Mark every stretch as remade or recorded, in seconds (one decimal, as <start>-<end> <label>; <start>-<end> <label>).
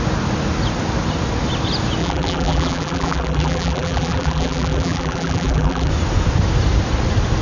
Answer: 0.0-2.0 recorded; 2.0-5.9 remade; 5.9-7.4 recorded